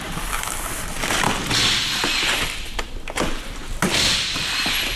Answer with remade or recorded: recorded